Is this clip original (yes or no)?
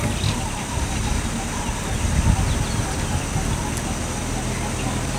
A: yes